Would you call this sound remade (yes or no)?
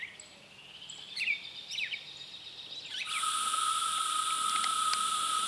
yes